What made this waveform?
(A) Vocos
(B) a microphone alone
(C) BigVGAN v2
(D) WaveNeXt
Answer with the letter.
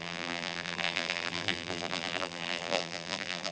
C